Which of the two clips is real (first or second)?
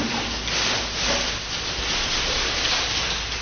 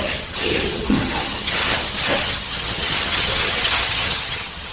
first